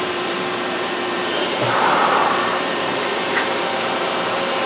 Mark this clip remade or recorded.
remade